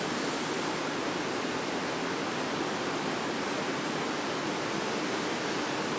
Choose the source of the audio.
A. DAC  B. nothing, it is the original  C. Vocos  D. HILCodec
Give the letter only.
B